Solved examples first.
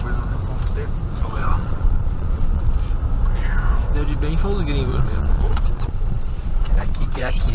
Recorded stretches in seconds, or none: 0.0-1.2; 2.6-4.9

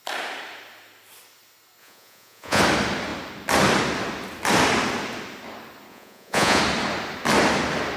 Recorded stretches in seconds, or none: 0.0-1.8; 2.6-5.9; 6.6-8.0